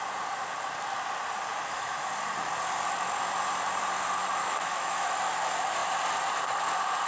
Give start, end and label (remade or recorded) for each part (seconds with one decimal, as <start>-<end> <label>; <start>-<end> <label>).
0.0-1.5 recorded; 1.5-2.1 remade; 2.1-4.4 recorded; 4.4-5.1 remade; 5.1-7.1 recorded